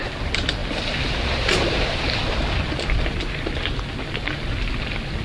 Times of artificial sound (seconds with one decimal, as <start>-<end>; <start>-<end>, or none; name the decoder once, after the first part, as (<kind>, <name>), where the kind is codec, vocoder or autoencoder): none